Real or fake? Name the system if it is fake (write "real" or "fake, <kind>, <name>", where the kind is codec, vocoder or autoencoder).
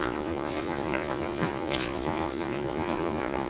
fake, vocoder, Vocos